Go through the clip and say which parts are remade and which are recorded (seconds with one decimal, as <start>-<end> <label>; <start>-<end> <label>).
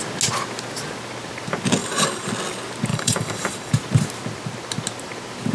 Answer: 0.0-1.8 recorded; 1.8-2.3 remade; 2.3-2.9 recorded; 2.9-3.7 remade; 3.7-5.5 recorded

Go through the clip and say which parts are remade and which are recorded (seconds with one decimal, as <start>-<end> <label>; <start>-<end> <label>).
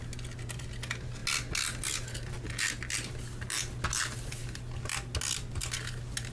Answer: 0.0-6.3 recorded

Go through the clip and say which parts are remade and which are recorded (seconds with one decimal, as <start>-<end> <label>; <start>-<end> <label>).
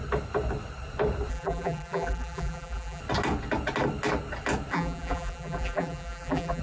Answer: 0.0-1.3 recorded; 1.3-3.0 remade; 3.0-4.7 recorded; 4.7-6.6 remade